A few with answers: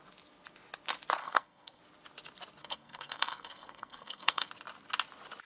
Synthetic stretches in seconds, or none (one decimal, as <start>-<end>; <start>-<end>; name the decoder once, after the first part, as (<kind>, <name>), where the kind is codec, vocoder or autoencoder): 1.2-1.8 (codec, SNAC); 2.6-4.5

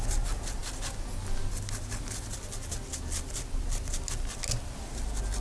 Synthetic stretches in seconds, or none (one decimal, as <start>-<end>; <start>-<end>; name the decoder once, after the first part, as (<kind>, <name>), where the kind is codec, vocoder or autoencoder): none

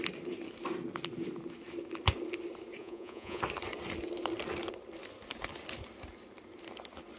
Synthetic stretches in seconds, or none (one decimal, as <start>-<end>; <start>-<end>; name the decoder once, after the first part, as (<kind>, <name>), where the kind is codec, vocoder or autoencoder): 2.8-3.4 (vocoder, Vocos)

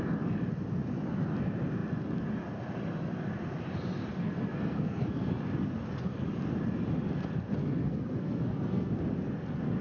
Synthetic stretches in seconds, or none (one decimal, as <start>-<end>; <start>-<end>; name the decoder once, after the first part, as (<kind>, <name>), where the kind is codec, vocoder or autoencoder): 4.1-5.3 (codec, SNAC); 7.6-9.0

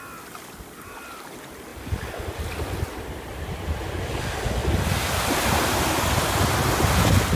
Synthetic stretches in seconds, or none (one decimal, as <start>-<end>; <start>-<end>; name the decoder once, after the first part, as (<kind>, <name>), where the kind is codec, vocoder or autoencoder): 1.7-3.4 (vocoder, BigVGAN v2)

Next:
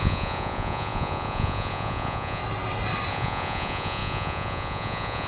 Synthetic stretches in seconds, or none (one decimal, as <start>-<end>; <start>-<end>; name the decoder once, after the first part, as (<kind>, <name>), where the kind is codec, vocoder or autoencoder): 0.0-2.4 (vocoder, Vocos); 3.1-5.3

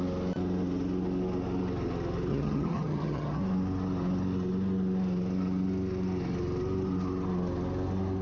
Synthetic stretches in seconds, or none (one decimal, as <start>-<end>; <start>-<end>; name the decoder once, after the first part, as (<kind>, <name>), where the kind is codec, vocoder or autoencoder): 2.3-3.4 (vocoder, HiFi-GAN)

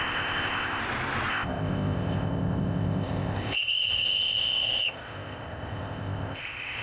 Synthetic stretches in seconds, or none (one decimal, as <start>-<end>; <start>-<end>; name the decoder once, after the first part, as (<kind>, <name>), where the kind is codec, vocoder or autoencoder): 0.0-0.8 (codec, ZipCodec); 1.3-6.8